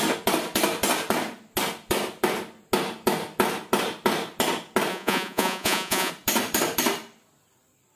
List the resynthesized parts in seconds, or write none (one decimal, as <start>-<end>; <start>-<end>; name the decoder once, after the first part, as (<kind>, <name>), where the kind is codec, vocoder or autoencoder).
4.9-6.1 (vocoder, Vocos)